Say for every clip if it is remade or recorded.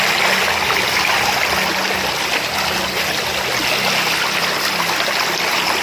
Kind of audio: recorded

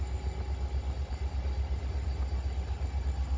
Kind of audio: recorded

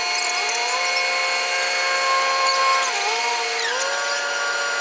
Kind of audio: recorded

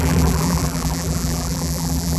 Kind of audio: remade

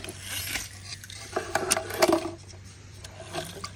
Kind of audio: remade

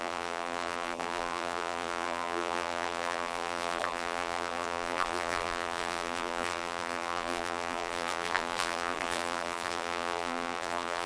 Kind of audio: remade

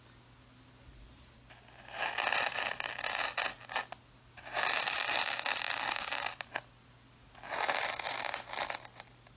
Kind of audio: recorded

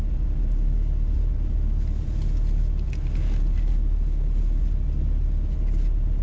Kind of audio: recorded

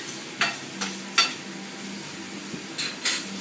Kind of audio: recorded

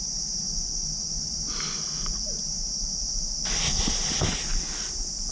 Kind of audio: recorded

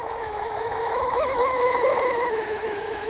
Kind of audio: remade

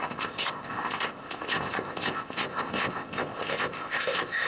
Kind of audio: remade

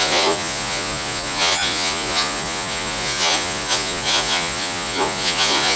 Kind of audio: remade